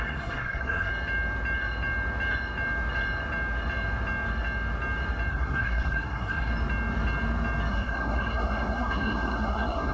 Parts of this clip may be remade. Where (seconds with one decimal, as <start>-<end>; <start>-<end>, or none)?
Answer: 0.0-0.9; 5.3-6.5; 7.7-9.9